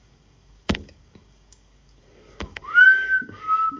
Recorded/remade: remade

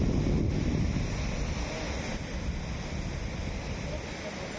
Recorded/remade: recorded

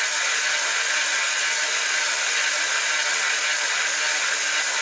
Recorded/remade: recorded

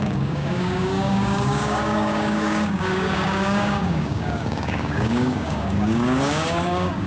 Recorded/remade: remade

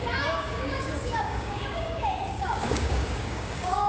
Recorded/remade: remade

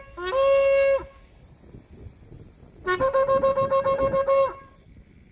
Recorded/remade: recorded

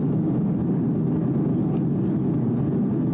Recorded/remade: recorded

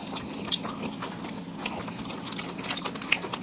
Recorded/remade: recorded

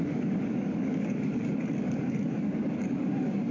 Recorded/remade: remade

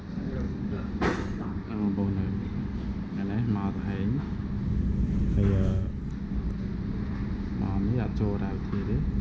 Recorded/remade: recorded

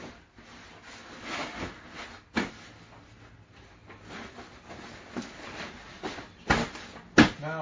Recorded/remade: recorded